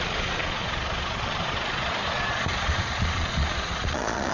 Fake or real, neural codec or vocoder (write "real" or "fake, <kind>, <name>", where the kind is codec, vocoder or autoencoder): fake, vocoder, Vocos